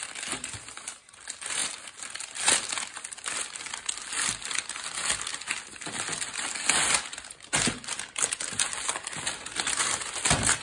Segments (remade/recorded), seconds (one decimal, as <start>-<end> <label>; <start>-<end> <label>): 0.0-5.3 remade; 5.3-9.5 recorded; 9.5-10.6 remade